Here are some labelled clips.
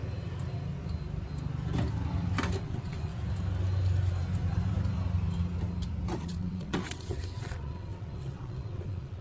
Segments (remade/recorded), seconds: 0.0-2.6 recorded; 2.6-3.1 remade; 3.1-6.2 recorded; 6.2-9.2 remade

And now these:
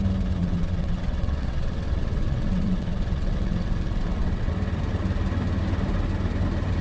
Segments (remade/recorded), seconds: 0.0-0.4 recorded; 0.4-4.5 remade; 4.5-6.8 recorded